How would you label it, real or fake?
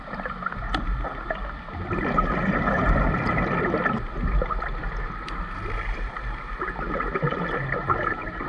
real